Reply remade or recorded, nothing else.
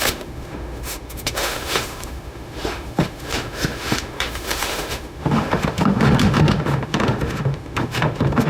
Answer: remade